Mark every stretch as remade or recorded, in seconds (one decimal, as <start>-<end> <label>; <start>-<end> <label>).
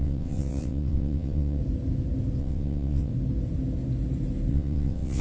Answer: 0.0-1.6 remade; 1.6-2.4 recorded; 2.4-3.1 remade; 3.1-4.5 recorded; 4.5-5.2 remade